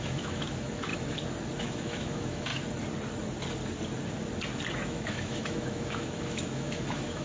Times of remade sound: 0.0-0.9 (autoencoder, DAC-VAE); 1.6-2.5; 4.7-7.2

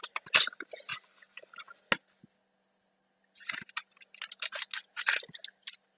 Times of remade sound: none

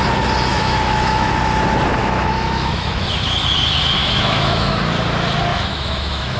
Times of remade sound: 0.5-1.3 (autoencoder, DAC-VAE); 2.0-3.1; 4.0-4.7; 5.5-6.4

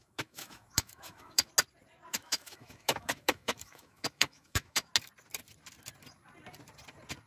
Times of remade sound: 0.0-1.5 (autoencoder, DAC-VAE); 2.1-4.9